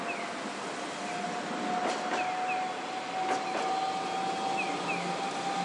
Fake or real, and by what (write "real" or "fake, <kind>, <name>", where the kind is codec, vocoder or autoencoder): real